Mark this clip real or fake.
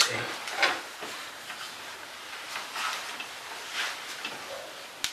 real